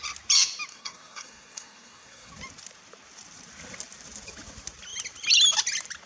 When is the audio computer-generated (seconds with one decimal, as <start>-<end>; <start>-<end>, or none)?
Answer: 0.7-2.3